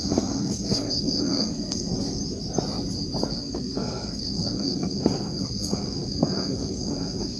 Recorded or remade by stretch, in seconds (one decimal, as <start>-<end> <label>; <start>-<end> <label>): 0.0-2.2 remade; 2.2-3.3 recorded; 3.3-7.4 remade